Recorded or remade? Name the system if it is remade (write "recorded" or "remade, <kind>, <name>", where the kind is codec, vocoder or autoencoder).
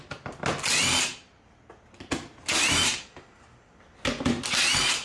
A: recorded